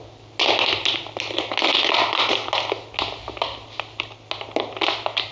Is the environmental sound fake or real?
real